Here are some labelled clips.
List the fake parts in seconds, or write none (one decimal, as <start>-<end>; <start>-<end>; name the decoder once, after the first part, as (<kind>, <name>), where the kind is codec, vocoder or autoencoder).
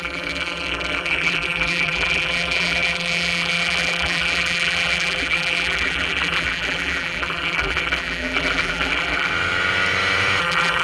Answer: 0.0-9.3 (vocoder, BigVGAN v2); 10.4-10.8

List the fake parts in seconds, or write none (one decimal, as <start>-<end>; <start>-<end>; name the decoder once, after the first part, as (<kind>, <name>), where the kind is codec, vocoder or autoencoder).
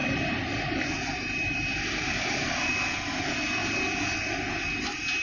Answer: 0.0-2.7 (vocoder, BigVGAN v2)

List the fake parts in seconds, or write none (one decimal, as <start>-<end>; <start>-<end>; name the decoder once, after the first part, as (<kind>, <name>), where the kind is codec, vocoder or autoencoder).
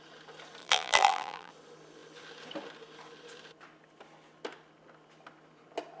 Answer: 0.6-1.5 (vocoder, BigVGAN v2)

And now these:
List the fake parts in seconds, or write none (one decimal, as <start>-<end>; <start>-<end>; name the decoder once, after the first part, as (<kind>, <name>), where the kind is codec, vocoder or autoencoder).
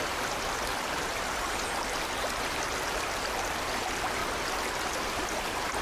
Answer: 0.0-1.1 (vocoder, BigVGAN v2); 3.5-4.2; 4.9-5.8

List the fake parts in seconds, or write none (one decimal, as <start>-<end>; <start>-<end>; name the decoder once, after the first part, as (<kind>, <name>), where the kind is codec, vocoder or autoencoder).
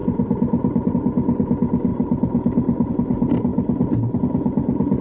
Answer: 0.0-0.9 (vocoder, BigVGAN v2); 1.9-2.9; 3.5-4.2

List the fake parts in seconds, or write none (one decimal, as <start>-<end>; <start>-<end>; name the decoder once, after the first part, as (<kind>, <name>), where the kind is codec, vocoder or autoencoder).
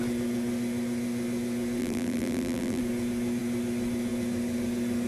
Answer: 1.8-2.8 (vocoder, BigVGAN v2)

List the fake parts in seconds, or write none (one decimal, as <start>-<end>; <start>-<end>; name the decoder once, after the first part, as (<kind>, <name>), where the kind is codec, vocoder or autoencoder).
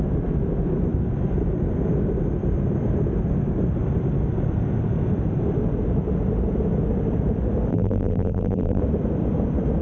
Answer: 7.7-8.8 (vocoder, BigVGAN v2)